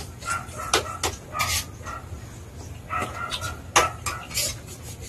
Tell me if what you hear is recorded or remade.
recorded